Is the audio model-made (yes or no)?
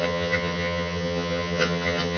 yes